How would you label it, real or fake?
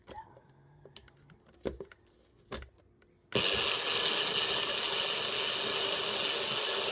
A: real